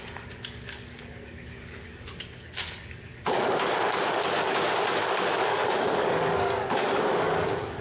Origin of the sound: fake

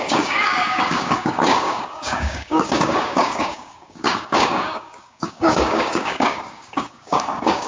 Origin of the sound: fake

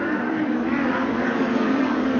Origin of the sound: fake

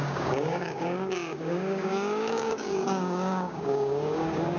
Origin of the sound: fake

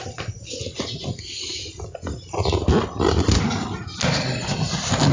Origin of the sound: real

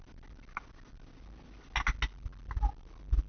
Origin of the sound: real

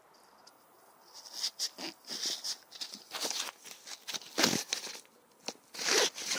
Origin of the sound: real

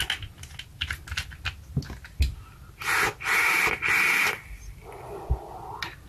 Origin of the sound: real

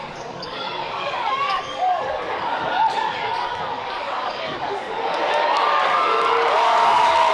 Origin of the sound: fake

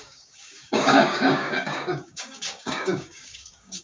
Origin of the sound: fake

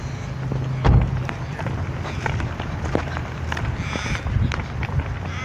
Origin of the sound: real